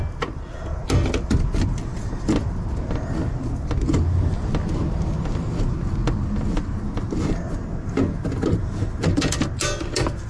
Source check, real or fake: real